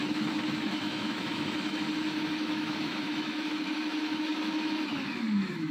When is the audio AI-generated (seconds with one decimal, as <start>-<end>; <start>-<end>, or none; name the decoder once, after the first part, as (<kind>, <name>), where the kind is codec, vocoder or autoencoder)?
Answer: 0.0-5.7 (autoencoder, DAC-VAE)